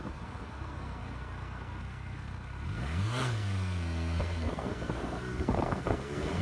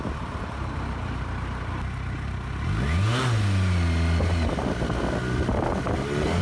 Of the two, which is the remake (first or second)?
first